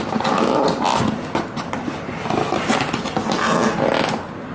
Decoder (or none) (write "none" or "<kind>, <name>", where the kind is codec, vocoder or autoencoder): none